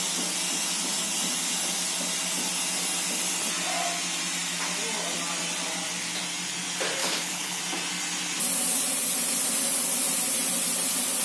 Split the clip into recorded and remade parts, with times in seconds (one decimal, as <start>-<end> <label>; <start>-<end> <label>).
0.0-7.0 recorded; 7.0-7.6 remade; 7.6-11.2 recorded